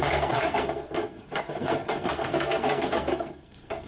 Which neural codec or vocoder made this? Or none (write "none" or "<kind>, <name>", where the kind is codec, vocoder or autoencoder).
codec, SNAC